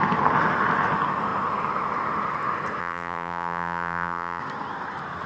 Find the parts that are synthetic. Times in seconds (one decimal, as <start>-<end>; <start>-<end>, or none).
2.8-4.4